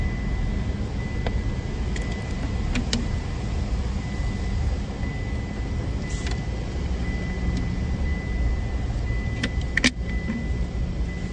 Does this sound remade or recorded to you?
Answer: recorded